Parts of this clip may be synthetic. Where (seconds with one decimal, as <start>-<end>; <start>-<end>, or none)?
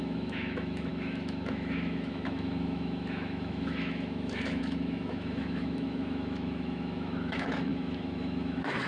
0.0-8.9